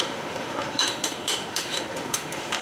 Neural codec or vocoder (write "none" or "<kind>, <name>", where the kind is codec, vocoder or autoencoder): autoencoder, DAC-VAE